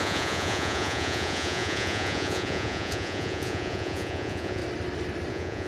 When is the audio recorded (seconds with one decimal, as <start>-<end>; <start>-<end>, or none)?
4.6-5.3